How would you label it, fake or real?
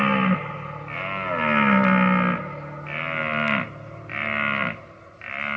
real